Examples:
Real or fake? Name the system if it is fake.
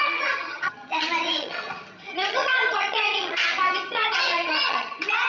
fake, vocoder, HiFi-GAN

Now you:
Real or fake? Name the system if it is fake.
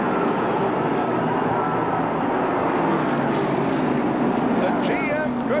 real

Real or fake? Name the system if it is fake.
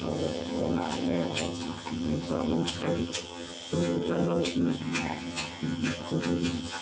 fake, vocoder, HiFi-GAN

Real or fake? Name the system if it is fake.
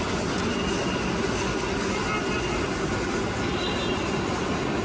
real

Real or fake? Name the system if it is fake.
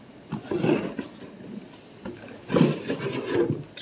real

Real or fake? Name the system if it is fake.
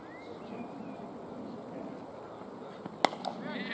real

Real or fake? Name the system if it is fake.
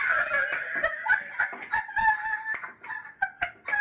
real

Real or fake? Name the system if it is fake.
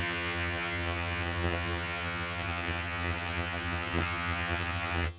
fake, vocoder, HiFi-GAN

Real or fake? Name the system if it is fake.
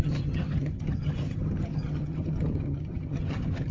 fake, vocoder, HiFi-GAN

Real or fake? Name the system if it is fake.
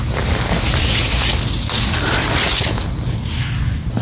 real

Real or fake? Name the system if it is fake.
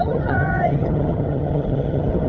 fake, vocoder, HiFi-GAN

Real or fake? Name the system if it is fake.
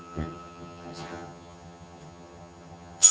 fake, vocoder, HiFi-GAN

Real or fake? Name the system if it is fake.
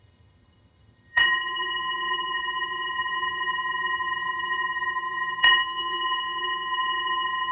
fake, vocoder, HiFi-GAN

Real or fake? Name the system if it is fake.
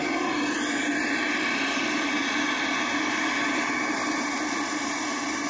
real